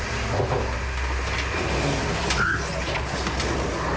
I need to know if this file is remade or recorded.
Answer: recorded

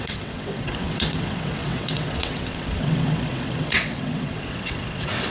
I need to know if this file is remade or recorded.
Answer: remade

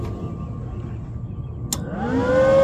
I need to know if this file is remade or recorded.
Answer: recorded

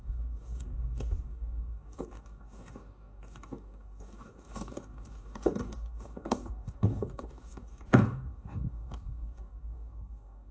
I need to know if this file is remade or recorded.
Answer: remade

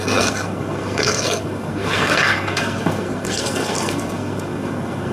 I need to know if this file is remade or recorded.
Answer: remade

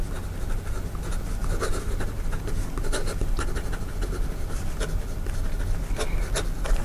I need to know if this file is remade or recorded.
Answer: recorded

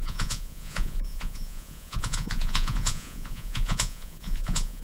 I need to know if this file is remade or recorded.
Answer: remade